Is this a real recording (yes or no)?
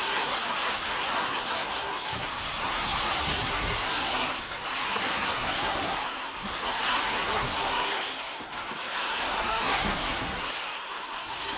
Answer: no